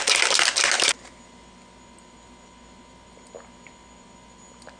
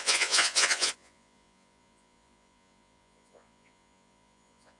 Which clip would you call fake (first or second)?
second